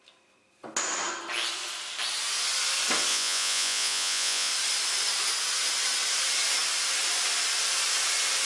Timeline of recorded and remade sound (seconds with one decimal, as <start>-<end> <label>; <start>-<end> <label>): 0.0-3.1 recorded; 3.1-4.5 remade; 4.5-8.4 recorded